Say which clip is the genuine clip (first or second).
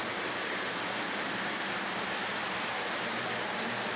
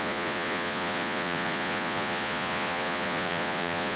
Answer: first